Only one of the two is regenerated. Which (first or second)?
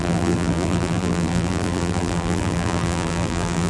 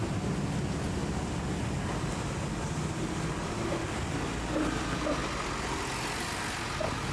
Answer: first